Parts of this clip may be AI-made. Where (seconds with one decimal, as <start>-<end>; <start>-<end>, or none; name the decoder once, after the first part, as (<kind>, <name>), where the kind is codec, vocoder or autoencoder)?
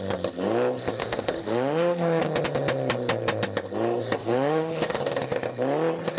1.0-2.2 (autoencoder, DAC-VAE); 4.2-5.0